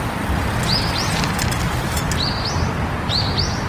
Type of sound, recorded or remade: recorded